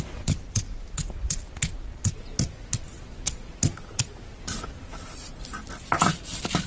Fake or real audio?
real